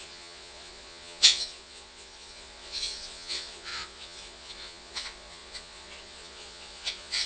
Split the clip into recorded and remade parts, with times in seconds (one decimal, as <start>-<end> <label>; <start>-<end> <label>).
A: 0.0-7.3 remade